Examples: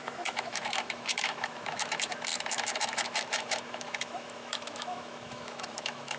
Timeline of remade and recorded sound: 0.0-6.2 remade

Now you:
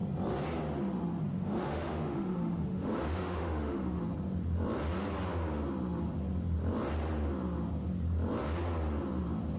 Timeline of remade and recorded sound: 0.0-1.3 recorded; 1.3-4.0 remade; 4.0-9.6 recorded

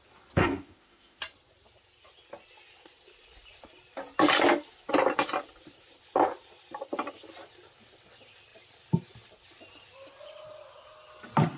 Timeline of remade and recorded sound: 0.0-0.4 recorded; 0.4-1.2 remade; 1.2-11.6 recorded

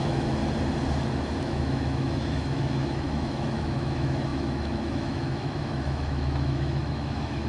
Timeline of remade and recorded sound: 0.0-0.4 remade; 0.4-1.4 recorded; 1.4-7.5 remade

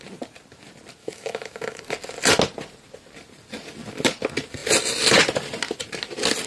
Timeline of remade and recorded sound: 0.0-1.0 recorded; 1.0-1.8 remade; 1.8-6.5 recorded

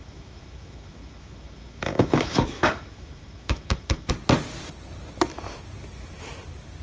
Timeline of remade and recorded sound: 0.0-4.1 remade; 4.1-6.8 recorded